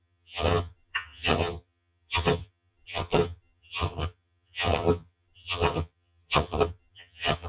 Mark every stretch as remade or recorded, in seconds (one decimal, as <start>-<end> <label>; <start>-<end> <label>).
0.0-7.5 remade

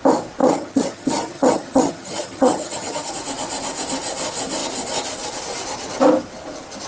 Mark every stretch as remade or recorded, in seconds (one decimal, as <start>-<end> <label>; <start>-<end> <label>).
0.0-0.4 recorded; 0.4-3.1 remade; 3.1-6.9 recorded

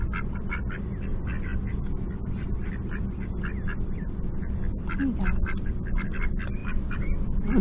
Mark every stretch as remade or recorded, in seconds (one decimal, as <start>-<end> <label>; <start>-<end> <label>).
0.0-7.6 recorded

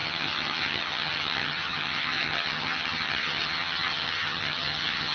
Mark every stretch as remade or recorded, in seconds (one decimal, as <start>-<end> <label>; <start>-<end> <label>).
0.0-5.1 remade

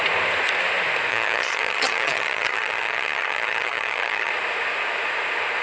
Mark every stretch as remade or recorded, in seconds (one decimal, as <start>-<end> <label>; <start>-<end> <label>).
0.0-1.1 recorded; 1.1-4.3 remade; 4.3-5.6 recorded

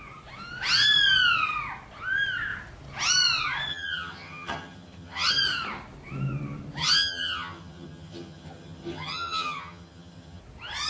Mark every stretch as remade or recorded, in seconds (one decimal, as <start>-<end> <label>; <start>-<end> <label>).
0.0-3.7 recorded; 3.7-5.3 remade; 5.3-6.8 recorded; 6.8-10.4 remade; 10.4-10.9 recorded